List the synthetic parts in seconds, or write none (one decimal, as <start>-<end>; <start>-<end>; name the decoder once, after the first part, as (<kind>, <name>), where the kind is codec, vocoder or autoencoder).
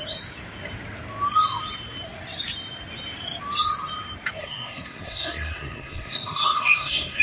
4.4-7.2 (codec, SNAC)